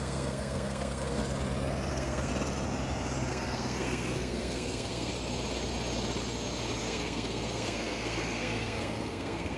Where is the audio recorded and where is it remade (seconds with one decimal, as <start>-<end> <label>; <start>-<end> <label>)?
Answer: 0.0-1.2 remade; 1.2-1.9 recorded; 1.9-2.3 remade; 2.3-3.3 recorded; 3.3-5.1 remade; 5.1-6.8 recorded; 6.8-9.6 remade